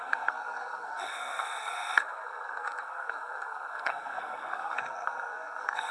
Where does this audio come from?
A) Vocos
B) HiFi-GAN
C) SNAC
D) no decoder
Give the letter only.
C